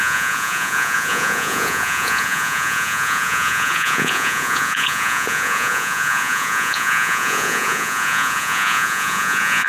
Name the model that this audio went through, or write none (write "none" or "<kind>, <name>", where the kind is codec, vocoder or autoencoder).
vocoder, Vocos